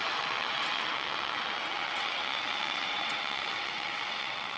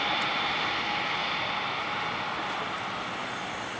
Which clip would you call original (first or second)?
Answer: second